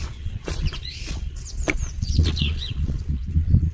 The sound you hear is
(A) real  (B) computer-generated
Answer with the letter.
B